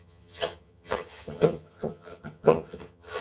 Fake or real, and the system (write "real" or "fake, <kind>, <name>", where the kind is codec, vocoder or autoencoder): fake, vocoder, HiFi-GAN